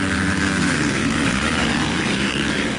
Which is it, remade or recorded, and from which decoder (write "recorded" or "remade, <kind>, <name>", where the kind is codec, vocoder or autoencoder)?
remade, codec, DAC